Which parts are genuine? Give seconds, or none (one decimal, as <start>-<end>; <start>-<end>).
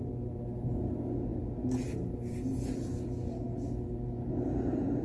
0.0-5.0